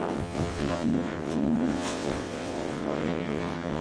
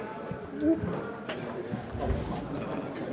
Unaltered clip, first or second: second